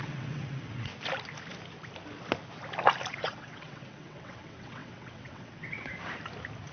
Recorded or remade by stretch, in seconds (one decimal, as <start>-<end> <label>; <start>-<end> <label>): 0.0-0.9 remade; 0.9-3.1 recorded; 3.1-5.9 remade; 5.9-6.7 recorded